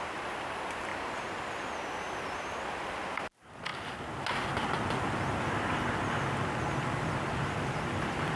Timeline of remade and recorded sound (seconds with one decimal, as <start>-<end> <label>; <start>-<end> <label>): 0.0-0.9 recorded; 0.9-1.4 remade; 1.4-8.4 recorded